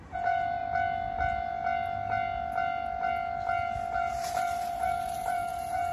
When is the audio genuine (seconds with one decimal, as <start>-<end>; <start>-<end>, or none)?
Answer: 0.6-4.1

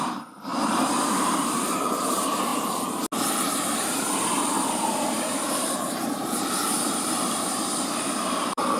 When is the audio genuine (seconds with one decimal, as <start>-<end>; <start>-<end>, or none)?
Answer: 0.5-1.1; 2.5-3.3